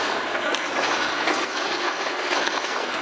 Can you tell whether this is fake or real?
fake